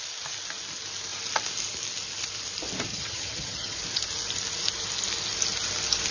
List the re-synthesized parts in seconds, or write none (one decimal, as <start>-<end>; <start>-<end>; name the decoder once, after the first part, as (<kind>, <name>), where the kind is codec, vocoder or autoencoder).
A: 2.9-3.8 (vocoder, HiFi-GAN)